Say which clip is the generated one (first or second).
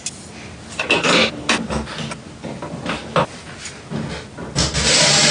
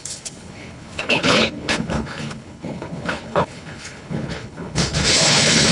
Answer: second